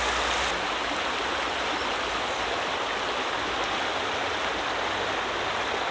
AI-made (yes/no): no